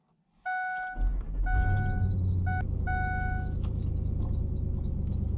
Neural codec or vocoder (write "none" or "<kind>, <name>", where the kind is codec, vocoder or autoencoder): none